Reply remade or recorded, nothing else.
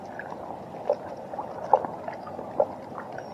recorded